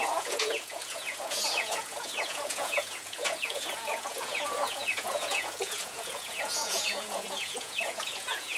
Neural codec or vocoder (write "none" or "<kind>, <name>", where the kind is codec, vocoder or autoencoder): vocoder, Vocos